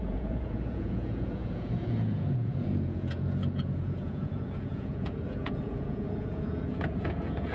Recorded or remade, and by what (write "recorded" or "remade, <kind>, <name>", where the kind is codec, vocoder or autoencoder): remade, vocoder, Vocos